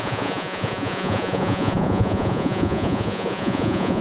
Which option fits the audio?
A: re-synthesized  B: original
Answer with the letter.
A